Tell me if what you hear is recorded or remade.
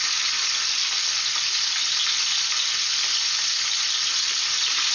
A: recorded